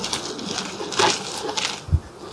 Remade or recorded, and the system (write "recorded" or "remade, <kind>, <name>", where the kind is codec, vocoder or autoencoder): recorded